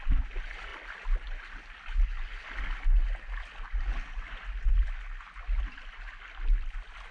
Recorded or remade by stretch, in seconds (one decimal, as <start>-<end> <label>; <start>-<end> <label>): 0.0-7.1 recorded